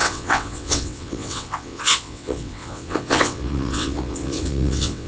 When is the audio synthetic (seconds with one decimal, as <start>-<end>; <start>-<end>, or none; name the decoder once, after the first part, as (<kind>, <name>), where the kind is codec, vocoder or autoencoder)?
0.0-5.1 (vocoder, WaveNeXt)